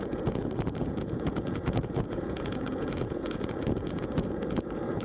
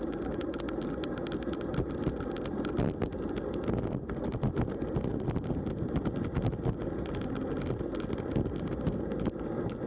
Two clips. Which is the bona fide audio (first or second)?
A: second